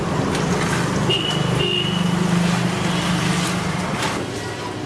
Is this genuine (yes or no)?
yes